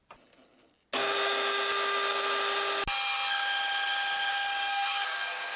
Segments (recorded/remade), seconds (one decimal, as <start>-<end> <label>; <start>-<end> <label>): 0.0-4.3 recorded; 4.3-5.6 remade